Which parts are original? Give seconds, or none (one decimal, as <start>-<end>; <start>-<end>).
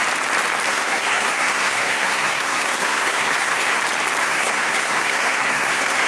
0.0-0.7; 3.8-4.2